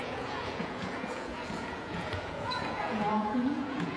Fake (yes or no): yes